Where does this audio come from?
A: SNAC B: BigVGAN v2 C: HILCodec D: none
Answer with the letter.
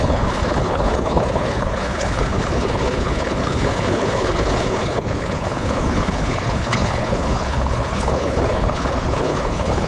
C